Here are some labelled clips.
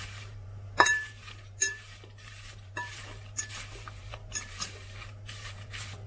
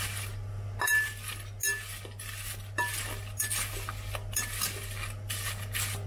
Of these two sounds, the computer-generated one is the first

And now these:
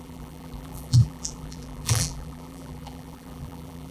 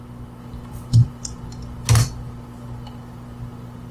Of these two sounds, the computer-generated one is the first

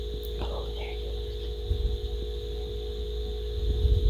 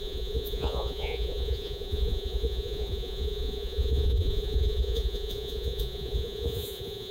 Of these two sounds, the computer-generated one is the second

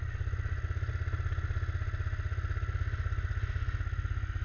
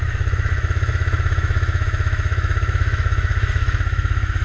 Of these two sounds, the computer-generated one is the second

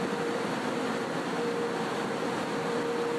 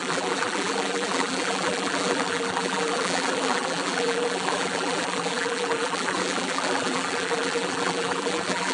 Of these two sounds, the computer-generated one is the second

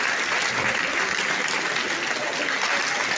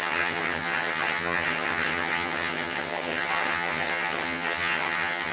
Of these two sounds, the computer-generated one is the second